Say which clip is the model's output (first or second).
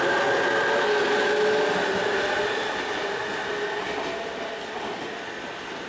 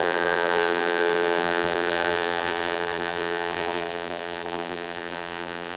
second